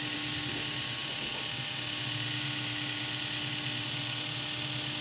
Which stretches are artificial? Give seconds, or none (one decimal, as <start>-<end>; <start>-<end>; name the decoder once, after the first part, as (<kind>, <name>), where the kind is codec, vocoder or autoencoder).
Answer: none